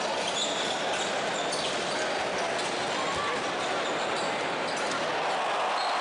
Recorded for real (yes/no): yes